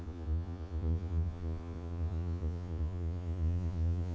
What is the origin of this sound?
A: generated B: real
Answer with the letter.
A